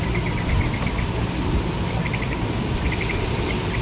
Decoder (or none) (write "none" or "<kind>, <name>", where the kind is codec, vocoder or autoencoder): none